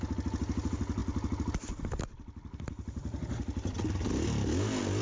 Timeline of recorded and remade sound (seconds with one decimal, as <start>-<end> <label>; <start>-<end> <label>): 0.0-5.0 recorded